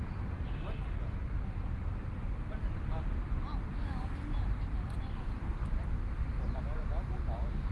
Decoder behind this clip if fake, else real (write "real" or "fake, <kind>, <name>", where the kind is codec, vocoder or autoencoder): real